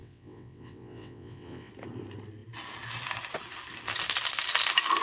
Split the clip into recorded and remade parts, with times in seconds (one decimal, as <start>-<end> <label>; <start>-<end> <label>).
0.0-1.7 remade; 1.7-5.0 recorded